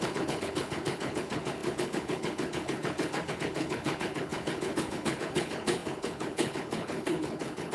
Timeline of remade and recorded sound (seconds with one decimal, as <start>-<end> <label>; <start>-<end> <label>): 0.0-7.7 remade